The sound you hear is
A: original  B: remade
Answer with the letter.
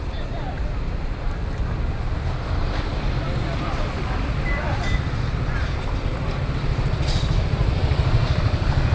B